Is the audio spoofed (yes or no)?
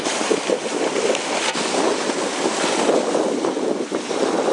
no